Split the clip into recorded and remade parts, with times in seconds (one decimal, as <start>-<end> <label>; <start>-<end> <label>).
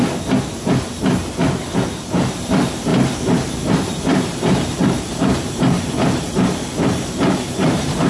0.0-2.9 recorded; 2.9-8.1 remade